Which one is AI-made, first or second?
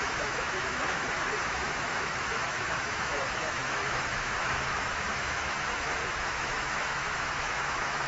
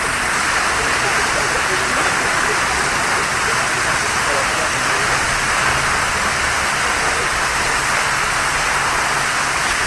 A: first